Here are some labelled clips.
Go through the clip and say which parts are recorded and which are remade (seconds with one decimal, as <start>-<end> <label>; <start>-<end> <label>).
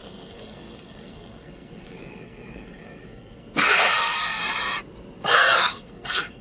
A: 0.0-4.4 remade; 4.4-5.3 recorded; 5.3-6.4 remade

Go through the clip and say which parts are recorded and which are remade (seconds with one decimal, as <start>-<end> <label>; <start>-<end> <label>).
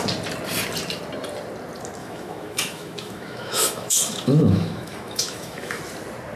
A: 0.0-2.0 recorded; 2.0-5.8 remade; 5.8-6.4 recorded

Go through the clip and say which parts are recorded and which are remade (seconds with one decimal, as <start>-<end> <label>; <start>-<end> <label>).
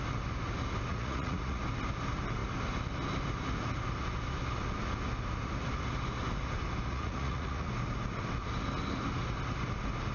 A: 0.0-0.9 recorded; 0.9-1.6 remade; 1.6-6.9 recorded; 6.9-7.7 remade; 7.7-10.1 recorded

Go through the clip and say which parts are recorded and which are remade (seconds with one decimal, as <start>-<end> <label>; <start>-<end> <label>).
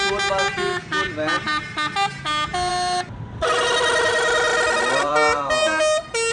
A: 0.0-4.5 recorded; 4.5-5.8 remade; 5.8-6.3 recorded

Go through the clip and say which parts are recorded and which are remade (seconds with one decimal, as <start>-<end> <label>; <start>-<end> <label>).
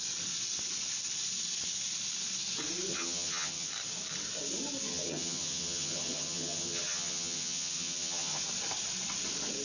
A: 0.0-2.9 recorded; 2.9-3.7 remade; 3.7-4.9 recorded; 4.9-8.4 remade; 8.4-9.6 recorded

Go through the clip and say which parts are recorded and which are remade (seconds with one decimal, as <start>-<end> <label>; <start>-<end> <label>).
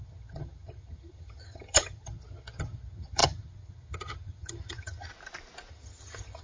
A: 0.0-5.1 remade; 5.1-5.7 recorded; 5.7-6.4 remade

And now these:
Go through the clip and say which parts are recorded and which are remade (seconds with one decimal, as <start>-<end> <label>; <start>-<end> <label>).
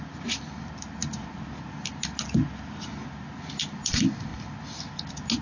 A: 0.0-1.0 remade; 1.0-3.6 recorded; 3.6-4.3 remade; 4.3-5.4 recorded